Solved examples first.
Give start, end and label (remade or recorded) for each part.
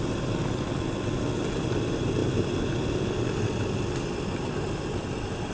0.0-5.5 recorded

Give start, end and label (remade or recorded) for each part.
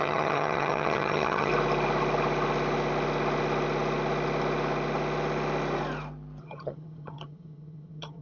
0.0-1.5 remade; 1.5-6.4 recorded; 6.4-8.2 remade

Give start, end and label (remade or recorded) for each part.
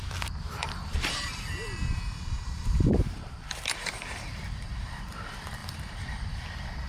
0.0-0.6 recorded; 0.6-4.7 remade; 4.7-5.6 recorded; 5.6-6.5 remade; 6.5-6.9 recorded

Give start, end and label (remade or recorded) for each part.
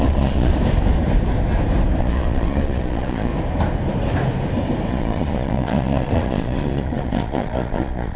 0.0-0.5 remade; 0.5-2.0 recorded; 2.0-3.3 remade; 3.3-4.9 recorded; 4.9-8.2 remade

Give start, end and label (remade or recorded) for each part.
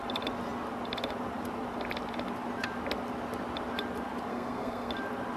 0.0-4.3 recorded; 4.3-4.9 remade; 4.9-5.4 recorded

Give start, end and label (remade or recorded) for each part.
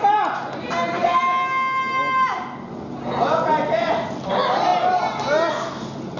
0.0-6.2 recorded